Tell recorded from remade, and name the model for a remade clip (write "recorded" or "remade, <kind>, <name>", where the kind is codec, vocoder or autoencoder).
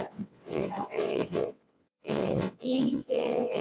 remade, vocoder, WaveNeXt